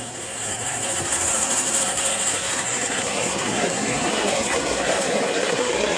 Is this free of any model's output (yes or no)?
no